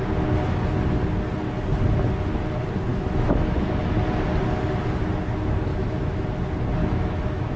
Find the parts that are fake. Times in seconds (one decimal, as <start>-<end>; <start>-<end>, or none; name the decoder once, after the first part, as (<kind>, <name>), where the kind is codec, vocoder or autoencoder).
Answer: 2.9-3.9 (autoencoder, DAC-VAE); 5.7-6.2; 6.8-7.6